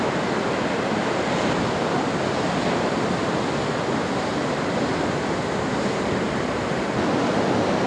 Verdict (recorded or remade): recorded